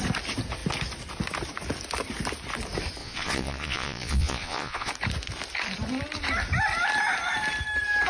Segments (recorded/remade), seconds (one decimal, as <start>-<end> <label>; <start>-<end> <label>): 0.0-3.0 recorded; 3.0-4.9 remade; 4.9-8.1 recorded